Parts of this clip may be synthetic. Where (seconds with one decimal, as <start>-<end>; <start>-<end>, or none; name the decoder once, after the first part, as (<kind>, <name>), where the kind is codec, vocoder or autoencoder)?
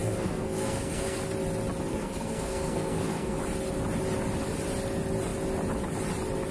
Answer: 0.0-1.2 (codec, SNAC); 1.9-3.4